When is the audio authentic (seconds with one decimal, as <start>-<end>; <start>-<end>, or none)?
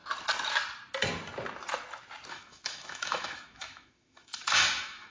0.0-2.3